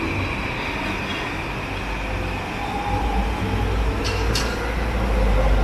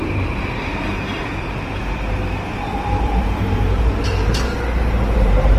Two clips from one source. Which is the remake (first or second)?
second